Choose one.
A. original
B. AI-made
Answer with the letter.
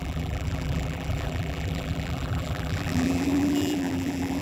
B